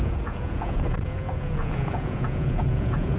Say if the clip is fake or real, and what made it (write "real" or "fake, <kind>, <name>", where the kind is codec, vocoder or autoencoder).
fake, vocoder, Vocos